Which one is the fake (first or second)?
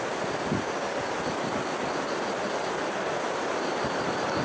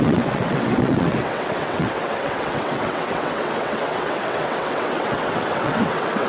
second